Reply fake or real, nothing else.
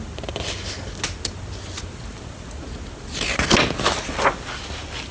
real